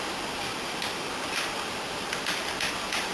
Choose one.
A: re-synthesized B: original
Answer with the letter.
B